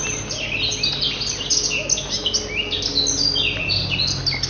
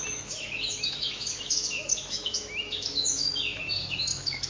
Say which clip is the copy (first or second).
second